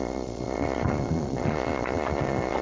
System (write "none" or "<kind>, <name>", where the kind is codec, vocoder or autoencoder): vocoder, Vocos